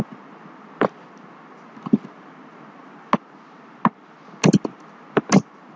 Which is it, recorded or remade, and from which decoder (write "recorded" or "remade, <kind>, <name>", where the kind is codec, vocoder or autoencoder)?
recorded